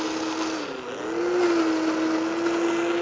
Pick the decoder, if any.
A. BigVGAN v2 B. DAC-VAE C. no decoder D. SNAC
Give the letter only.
C